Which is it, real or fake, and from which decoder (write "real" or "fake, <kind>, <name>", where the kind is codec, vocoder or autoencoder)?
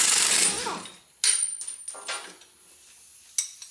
real